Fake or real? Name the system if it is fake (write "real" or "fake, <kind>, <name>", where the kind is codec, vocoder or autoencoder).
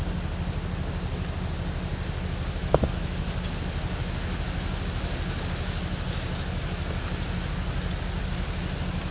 real